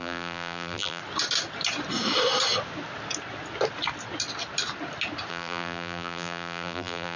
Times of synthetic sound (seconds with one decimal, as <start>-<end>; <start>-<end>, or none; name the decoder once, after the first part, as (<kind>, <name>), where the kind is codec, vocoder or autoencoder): 0.0-1.0 (vocoder, BigVGAN v2); 5.3-7.2